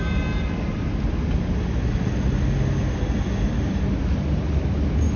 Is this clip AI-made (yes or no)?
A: no